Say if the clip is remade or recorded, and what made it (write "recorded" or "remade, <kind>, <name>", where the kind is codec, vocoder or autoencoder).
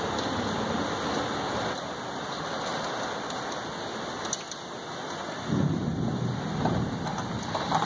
recorded